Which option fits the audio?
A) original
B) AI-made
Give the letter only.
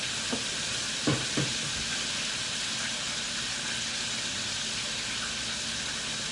A